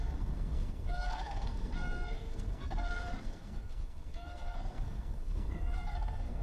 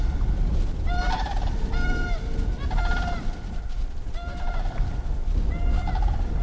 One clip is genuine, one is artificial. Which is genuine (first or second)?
second